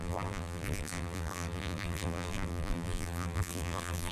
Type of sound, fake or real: fake